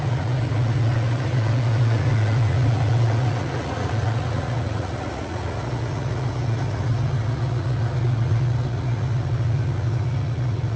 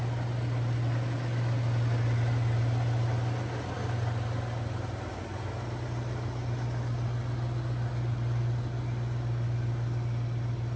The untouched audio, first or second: second